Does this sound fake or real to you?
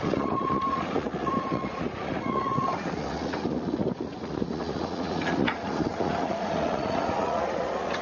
fake